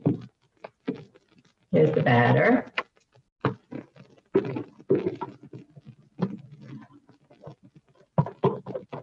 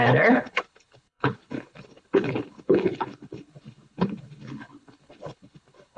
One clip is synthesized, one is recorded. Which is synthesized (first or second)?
second